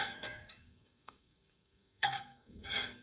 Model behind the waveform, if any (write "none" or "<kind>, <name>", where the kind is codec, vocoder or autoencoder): codec, SNAC